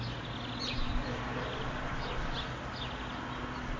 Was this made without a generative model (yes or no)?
yes